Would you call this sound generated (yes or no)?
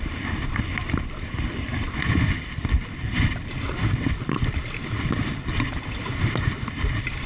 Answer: yes